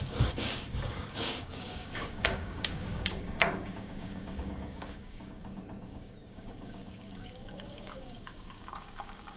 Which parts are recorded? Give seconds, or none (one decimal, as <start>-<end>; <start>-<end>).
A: none